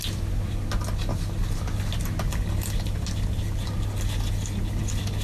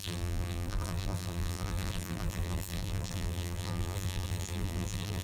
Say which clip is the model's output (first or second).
second